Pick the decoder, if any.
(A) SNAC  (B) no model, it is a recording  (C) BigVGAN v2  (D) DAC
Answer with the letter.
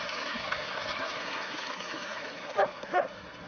A